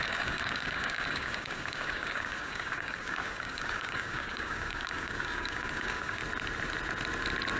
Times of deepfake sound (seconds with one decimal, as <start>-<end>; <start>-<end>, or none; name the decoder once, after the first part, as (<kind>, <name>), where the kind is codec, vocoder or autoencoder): 0.0-6.2 (codec, DAC)

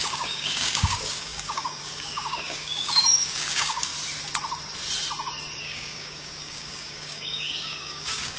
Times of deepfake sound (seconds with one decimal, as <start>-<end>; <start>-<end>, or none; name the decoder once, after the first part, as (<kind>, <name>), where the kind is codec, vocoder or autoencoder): 0.0-3.9 (codec, DAC); 5.6-8.4

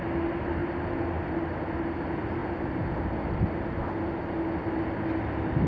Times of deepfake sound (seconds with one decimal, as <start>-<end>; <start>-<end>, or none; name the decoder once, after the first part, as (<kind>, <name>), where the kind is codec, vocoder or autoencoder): none

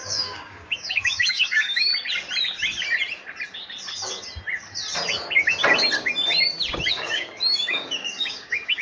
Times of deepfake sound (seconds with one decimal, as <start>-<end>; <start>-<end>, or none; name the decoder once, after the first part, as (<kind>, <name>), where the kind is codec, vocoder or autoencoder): 0.0-1.9 (codec, DAC); 6.9-8.8

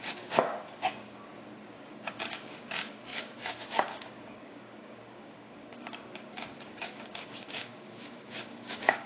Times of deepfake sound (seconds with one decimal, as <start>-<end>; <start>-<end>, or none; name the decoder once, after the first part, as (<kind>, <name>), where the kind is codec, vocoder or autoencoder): 0.0-1.3 (codec, DAC); 1.9-9.1

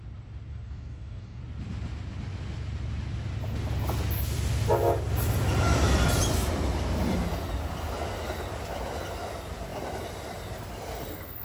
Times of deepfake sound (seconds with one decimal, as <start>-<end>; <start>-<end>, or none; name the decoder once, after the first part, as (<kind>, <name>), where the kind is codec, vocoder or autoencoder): 0.5-1.4 (codec, DAC)

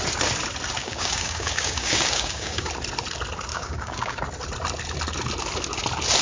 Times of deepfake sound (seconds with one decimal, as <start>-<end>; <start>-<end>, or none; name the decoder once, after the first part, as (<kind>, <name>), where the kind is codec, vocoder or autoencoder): 0.8-2.7 (codec, DAC); 3.5-4.2